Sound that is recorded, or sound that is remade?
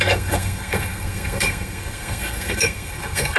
remade